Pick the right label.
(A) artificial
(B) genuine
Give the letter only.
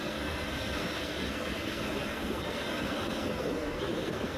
A